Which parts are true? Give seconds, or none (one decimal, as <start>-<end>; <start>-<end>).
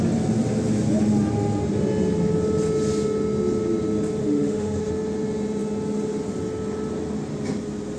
0.0-4.2; 4.9-8.0